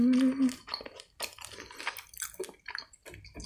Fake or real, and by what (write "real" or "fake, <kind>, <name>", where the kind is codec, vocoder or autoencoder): real